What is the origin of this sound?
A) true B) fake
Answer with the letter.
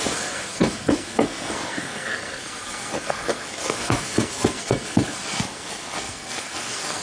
B